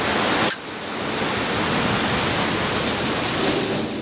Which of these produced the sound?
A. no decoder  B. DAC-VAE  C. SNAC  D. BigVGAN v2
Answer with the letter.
A